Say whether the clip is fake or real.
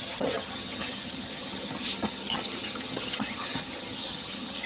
fake